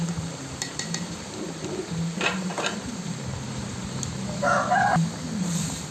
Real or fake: fake